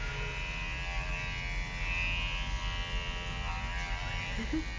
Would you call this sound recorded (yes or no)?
yes